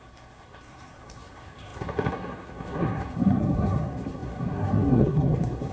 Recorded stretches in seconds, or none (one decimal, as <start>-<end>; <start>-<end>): none